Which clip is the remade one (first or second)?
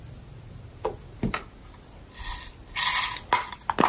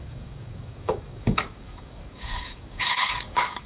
second